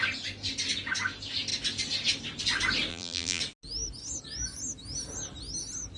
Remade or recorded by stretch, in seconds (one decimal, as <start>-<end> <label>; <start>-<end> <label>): 0.0-2.9 recorded; 2.9-3.4 remade; 3.4-6.0 recorded

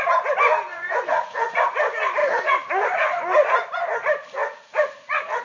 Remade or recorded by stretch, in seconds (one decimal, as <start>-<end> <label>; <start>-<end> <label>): 0.0-0.7 recorded; 0.7-1.6 remade; 1.6-4.4 recorded; 4.4-5.4 remade

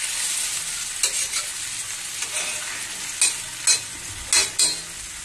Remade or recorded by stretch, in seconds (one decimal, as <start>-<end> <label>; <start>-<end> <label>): 0.0-5.2 recorded

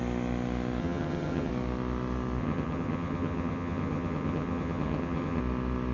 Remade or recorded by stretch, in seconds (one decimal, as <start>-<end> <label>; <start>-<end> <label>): 0.0-0.8 recorded; 0.8-1.5 remade; 1.5-2.4 recorded; 2.4-5.4 remade; 5.4-5.9 recorded

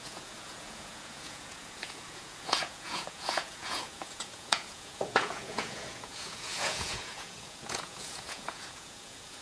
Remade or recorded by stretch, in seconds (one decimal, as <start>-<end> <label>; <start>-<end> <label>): 0.0-9.4 remade

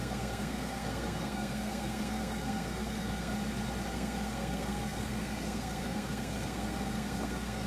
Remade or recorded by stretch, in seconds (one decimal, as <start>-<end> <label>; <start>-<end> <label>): 0.0-3.3 remade; 3.3-3.9 recorded; 3.9-7.7 remade

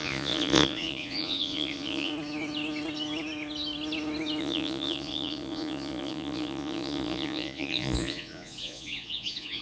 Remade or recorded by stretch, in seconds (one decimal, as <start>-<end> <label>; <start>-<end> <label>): 0.0-2.1 remade; 2.1-4.4 recorded; 4.4-9.6 remade